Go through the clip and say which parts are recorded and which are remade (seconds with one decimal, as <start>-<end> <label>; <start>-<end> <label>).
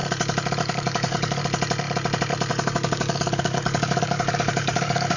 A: 0.0-0.6 recorded; 0.6-1.4 remade; 1.4-2.5 recorded; 2.5-5.2 remade